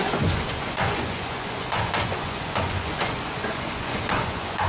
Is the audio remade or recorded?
remade